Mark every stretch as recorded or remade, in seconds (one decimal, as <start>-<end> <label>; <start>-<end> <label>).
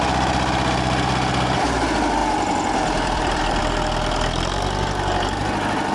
0.0-2.2 recorded; 2.2-3.6 remade; 3.6-5.9 recorded